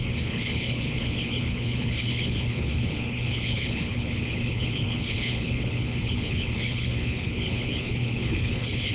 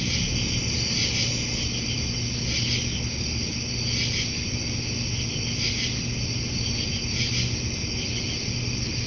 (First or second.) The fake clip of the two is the first